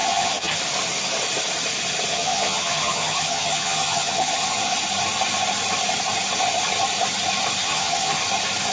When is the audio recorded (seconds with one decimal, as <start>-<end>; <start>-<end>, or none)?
0.6-2.1; 4.7-7.6; 8.2-8.7

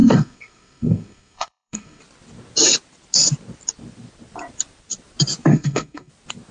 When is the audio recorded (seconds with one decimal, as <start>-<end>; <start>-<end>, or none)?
2.0-5.5; 6.1-6.5

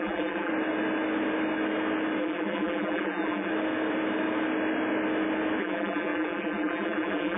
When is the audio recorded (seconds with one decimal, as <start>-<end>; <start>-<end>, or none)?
0.5-2.2; 3.5-5.6

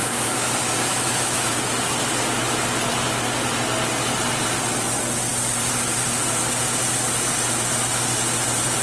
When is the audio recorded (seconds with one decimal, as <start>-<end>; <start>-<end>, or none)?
0.5-0.9; 1.5-8.8

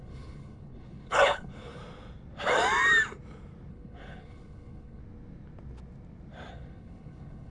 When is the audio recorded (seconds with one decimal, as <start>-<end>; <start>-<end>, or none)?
1.8-3.7; 5.0-6.5

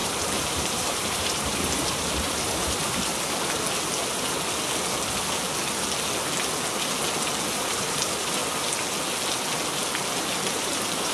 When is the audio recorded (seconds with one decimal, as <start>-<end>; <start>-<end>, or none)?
3.1-7.5; 8.4-10.5

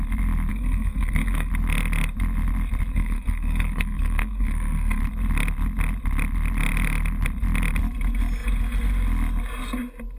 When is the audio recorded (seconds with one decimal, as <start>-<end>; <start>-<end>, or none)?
0.0-0.5; 1.5-2.9; 5.0-10.2